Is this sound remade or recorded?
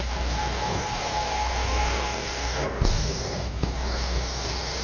remade